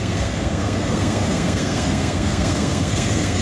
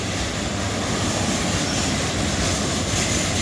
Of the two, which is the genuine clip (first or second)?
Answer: second